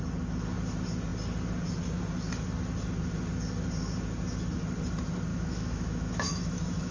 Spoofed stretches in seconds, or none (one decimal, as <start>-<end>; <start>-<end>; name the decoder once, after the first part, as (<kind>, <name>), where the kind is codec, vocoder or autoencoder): 5.3-6.9 (autoencoder, DAC-VAE)

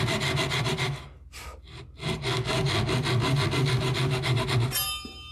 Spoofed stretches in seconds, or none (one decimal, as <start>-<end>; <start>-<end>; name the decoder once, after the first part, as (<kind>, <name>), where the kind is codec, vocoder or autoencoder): none

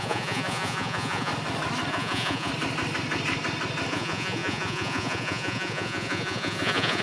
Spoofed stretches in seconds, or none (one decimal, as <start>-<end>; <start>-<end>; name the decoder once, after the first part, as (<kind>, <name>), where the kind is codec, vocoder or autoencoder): 0.0-1.3 (vocoder, Vocos); 1.9-2.5; 3.9-7.0

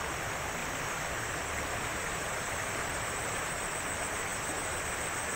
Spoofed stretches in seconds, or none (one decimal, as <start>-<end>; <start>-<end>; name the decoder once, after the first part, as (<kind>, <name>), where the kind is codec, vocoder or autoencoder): 0.6-1.4 (vocoder, BigVGAN v2); 1.9-3.6; 4.3-5.0

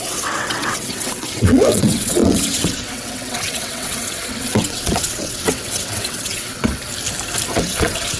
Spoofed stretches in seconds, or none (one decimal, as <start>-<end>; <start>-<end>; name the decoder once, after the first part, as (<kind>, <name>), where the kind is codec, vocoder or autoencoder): 0.0-6.7 (vocoder, WaveNeXt); 7.5-8.2